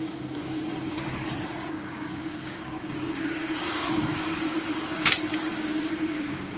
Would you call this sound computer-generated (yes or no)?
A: yes